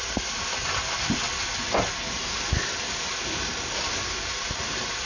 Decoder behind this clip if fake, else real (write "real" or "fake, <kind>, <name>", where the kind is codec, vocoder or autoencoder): real